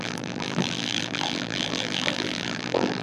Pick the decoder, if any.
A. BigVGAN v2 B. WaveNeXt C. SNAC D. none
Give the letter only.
A